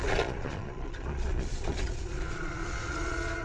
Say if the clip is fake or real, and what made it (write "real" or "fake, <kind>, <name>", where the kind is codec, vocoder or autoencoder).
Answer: fake, vocoder, Vocos